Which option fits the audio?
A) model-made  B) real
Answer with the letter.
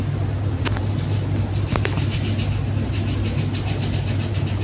B